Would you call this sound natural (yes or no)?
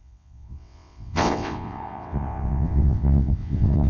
no